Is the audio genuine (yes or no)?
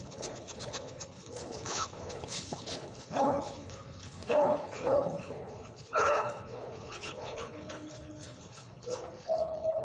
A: no